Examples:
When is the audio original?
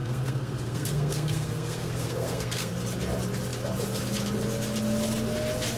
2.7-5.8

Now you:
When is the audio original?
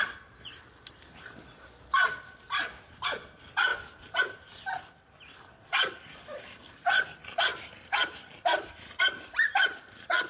0.0-10.3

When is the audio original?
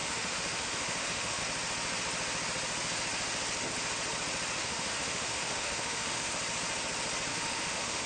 1.4-4.6; 6.3-7.3